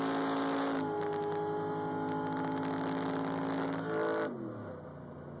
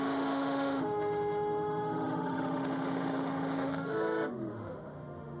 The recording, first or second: first